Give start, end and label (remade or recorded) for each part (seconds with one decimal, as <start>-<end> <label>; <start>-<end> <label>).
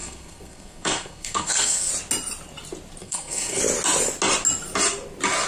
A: 0.0-1.9 remade; 1.9-3.0 recorded; 3.0-3.6 remade; 3.6-5.5 recorded